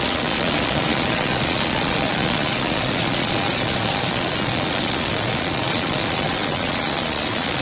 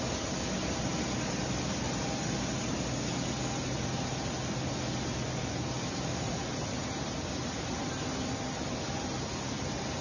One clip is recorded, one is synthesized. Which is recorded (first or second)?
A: second